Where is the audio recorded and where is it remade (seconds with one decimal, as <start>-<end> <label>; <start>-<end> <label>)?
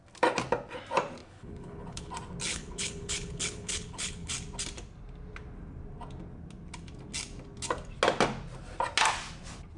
0.0-1.2 recorded; 1.2-2.1 remade; 2.1-2.5 recorded; 2.5-4.3 remade; 4.3-9.8 recorded